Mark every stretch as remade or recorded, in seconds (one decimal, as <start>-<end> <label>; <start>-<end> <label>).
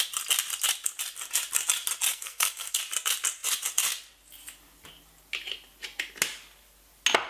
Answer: 0.0-2.1 recorded; 2.1-2.8 remade; 2.8-7.3 recorded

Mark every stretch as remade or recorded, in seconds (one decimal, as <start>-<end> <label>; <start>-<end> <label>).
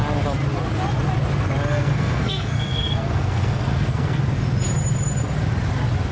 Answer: 0.0-1.7 recorded; 1.7-4.2 remade; 4.2-6.1 recorded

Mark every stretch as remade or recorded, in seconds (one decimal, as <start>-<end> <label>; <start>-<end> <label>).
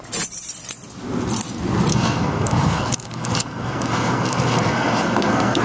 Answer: 0.0-1.9 recorded; 1.9-5.6 remade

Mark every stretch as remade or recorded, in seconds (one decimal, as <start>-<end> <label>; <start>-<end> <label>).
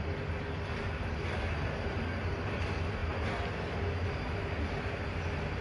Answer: 0.0-5.6 recorded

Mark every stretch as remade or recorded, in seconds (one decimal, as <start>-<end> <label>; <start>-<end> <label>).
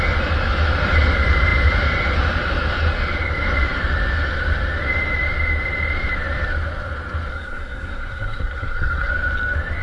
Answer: 0.0-7.3 recorded; 7.3-9.1 remade; 9.1-9.8 recorded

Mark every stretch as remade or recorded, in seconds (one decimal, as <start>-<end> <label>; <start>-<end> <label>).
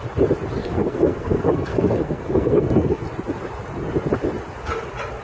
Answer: 0.0-0.6 recorded; 0.6-3.0 remade; 3.0-5.2 recorded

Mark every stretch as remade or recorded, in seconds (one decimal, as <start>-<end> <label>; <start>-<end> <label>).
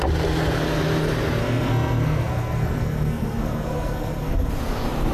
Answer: 0.0-1.4 recorded; 1.4-4.5 remade; 4.5-5.1 recorded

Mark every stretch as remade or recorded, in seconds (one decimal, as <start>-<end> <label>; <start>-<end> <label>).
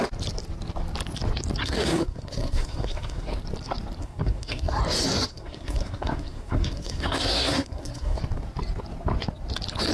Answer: 0.0-1.6 recorded; 1.6-3.4 remade; 3.4-4.0 recorded; 4.0-4.8 remade; 4.8-5.3 recorded; 5.3-8.2 remade; 8.2-9.9 recorded